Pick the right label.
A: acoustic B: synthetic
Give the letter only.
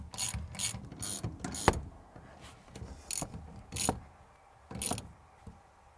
A